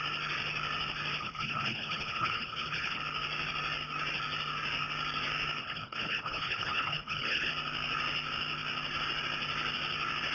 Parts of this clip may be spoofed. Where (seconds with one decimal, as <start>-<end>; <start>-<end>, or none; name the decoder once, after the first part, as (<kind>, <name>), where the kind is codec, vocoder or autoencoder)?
1.2-3.0 (codec, HILCodec); 5.6-7.5